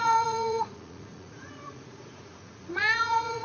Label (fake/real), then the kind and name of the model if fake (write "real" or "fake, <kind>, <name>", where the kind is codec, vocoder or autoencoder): fake, vocoder, Vocos